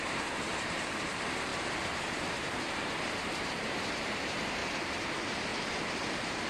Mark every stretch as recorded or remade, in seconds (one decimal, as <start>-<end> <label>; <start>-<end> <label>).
0.0-1.5 remade; 1.5-2.2 recorded; 2.2-4.6 remade; 4.6-5.1 recorded; 5.1-5.5 remade; 5.5-6.1 recorded; 6.1-6.5 remade